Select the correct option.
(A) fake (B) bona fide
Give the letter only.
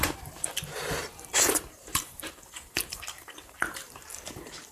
A